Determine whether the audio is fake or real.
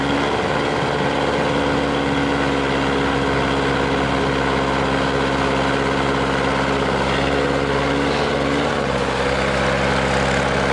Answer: real